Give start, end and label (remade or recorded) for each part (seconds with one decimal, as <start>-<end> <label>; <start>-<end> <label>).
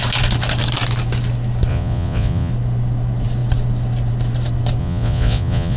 0.0-1.7 recorded; 1.7-2.5 remade; 2.5-4.8 recorded; 4.8-5.8 remade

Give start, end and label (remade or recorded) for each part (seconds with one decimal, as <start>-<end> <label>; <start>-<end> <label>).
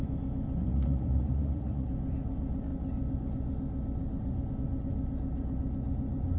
0.0-0.6 recorded; 0.6-1.9 remade; 1.9-6.4 recorded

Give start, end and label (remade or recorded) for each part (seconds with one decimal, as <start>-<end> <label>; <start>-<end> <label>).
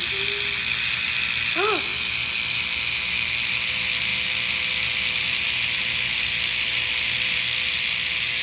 0.0-8.4 recorded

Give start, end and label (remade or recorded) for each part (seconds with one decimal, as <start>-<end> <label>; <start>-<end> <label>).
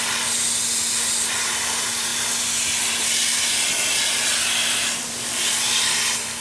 0.0-6.4 recorded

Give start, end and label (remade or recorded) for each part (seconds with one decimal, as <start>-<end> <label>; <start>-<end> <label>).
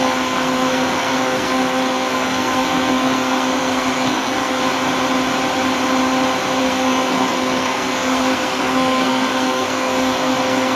0.0-4.6 remade; 4.6-6.6 recorded; 6.6-10.8 remade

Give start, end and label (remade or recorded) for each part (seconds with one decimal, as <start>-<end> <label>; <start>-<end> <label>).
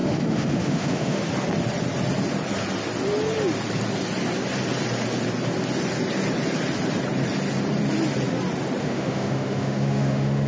0.0-1.2 remade; 1.2-8.8 recorded; 8.8-10.5 remade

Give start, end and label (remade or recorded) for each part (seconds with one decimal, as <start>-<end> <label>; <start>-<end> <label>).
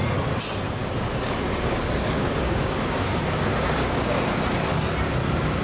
0.0-0.8 recorded; 0.8-4.2 remade; 4.2-5.6 recorded